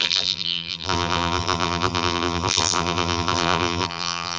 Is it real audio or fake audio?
fake